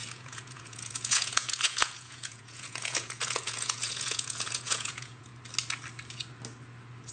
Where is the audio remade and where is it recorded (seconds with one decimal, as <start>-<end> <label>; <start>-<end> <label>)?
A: 0.0-5.3 remade; 5.3-7.1 recorded